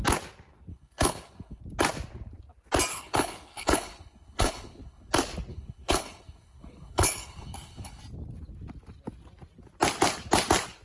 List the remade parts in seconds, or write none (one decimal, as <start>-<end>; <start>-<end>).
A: 0.7-1.6; 2.9-5.1; 5.5-8.0